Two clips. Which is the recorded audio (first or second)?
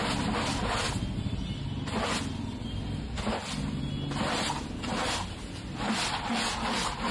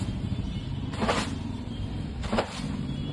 first